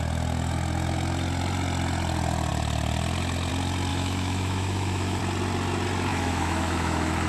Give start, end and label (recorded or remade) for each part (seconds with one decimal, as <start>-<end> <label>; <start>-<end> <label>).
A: 0.0-3.9 recorded; 3.9-5.2 remade; 5.2-6.1 recorded; 6.1-7.3 remade

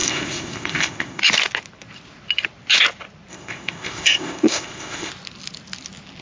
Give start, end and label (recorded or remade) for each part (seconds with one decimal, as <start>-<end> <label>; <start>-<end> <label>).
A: 0.0-1.2 remade; 1.2-3.3 recorded; 3.3-5.1 remade; 5.1-6.2 recorded

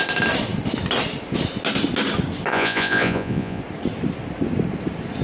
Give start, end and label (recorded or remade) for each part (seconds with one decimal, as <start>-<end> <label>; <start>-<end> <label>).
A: 0.0-2.5 recorded; 2.5-3.6 remade; 3.6-5.2 recorded

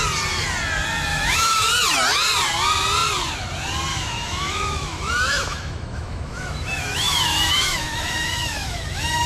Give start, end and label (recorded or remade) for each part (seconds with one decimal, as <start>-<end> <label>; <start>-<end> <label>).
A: 0.0-1.1 recorded; 1.1-1.6 remade; 1.6-3.9 recorded; 3.9-9.3 remade

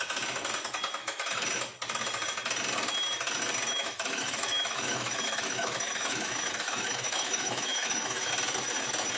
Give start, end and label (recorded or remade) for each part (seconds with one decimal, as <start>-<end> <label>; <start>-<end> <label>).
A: 0.0-1.0 recorded; 1.0-1.6 remade; 1.6-3.7 recorded; 3.7-8.3 remade; 8.3-9.2 recorded